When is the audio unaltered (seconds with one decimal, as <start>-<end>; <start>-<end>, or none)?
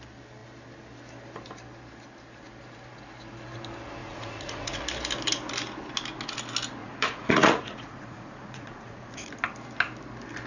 0.0-4.0; 4.8-6.8; 9.3-10.5